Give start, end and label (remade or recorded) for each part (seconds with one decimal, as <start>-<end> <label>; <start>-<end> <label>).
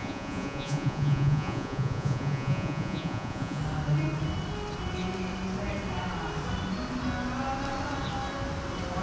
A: 0.0-3.6 remade; 3.6-9.0 recorded